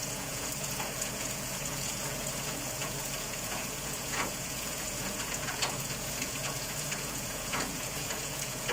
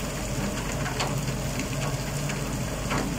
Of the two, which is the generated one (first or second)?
first